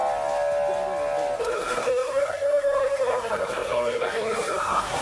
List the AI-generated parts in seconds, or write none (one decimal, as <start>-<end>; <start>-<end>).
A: 1.4-5.0